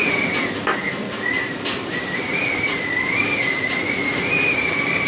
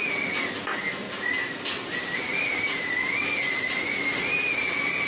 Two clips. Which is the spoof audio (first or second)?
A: first